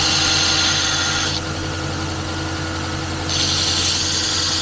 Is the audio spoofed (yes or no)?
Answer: no